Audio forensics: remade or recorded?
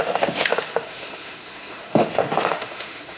remade